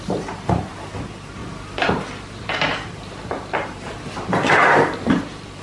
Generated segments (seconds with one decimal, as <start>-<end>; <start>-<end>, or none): 0.0-1.4; 1.9-5.6